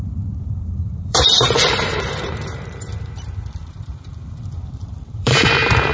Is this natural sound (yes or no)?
no